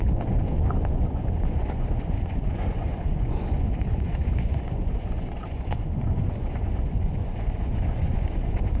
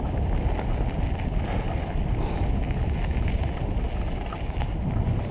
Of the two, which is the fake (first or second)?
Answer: first